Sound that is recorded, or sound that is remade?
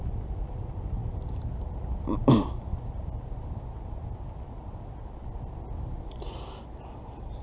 recorded